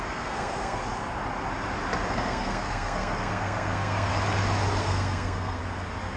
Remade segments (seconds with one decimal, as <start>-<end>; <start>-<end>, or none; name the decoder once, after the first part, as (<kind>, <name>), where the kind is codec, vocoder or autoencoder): 0.0-0.8 (codec, SNAC); 2.1-4.1; 4.8-5.6